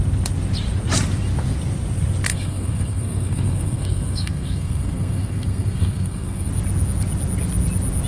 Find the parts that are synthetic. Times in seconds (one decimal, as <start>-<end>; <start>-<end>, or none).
2.3-6.5